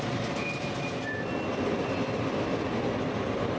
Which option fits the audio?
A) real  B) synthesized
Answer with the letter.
A